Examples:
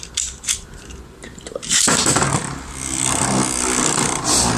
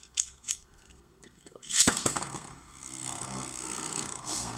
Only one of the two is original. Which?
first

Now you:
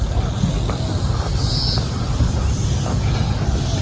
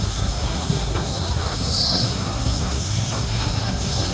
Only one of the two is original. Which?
first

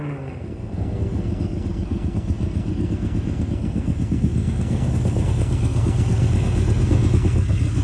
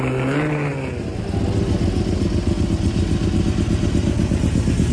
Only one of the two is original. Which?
second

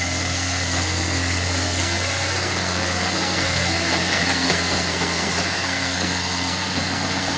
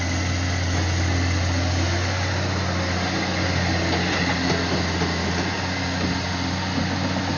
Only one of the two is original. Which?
second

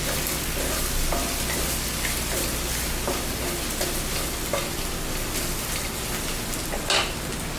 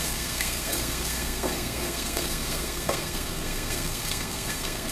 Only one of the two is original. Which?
first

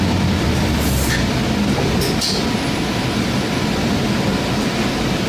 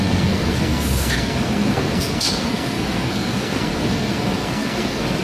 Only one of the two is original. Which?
first